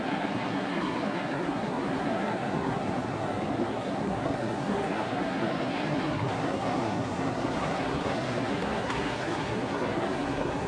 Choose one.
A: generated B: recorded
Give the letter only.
A